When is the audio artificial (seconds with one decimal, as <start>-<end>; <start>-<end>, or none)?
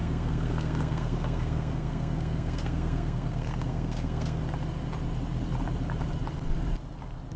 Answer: 0.0-4.4